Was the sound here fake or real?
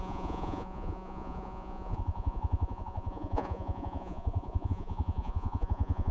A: fake